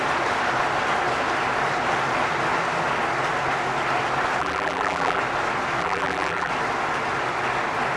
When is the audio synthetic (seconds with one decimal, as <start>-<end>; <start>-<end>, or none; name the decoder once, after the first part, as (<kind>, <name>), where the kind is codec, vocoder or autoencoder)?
4.4-5.2 (vocoder, BigVGAN v2); 5.8-6.5